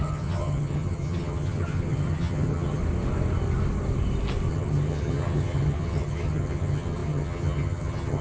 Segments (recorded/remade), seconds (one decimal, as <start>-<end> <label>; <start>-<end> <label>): 0.0-2.8 remade; 2.8-4.5 recorded; 4.5-8.2 remade